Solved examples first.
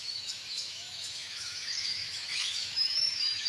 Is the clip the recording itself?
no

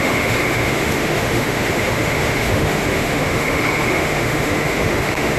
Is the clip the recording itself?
no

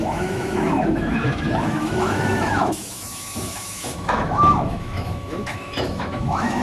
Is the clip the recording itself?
no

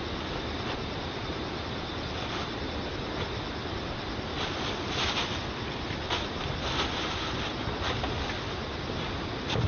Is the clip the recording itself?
yes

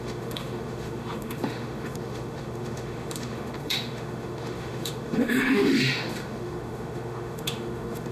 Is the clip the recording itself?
no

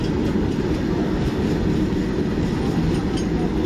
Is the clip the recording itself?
yes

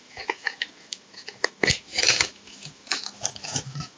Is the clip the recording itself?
no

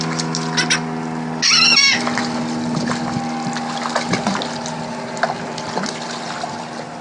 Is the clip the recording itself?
yes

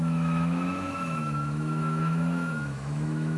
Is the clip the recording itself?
no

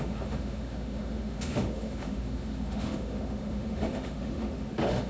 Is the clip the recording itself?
no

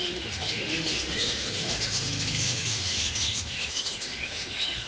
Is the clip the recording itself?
no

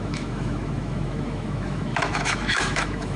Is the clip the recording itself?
no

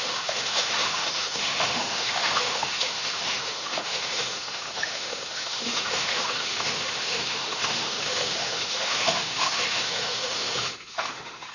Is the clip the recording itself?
no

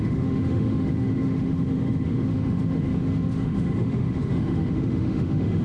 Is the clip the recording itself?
no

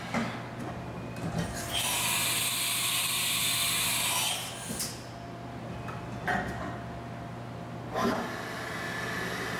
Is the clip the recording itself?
yes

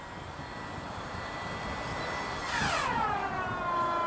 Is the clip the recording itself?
yes